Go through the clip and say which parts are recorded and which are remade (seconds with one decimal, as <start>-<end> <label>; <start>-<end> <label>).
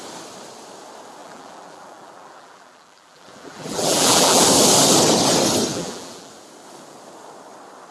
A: 0.0-1.2 recorded; 1.2-4.4 remade; 4.4-5.7 recorded; 5.7-6.3 remade; 6.3-7.9 recorded